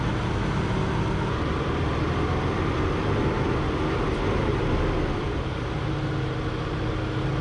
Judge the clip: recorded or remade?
recorded